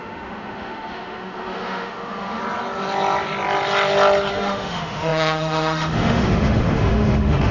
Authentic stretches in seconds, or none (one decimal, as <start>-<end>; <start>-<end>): 2.4-4.3